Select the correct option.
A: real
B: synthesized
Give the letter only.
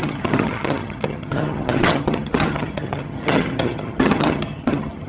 B